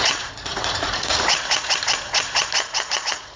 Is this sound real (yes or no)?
no